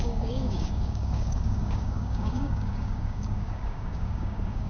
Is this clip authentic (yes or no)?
no